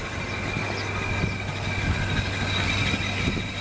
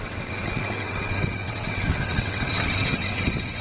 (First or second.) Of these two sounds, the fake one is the second